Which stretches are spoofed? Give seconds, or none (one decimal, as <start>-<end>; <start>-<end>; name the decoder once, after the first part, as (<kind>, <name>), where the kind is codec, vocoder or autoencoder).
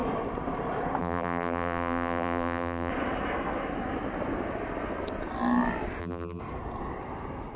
1.0-2.9 (vocoder, BigVGAN v2); 6.0-6.4